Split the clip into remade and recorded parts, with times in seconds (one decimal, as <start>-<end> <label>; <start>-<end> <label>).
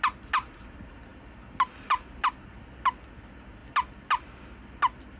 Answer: 0.0-5.2 recorded